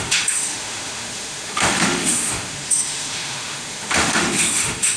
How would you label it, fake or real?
fake